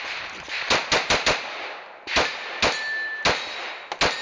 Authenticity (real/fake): real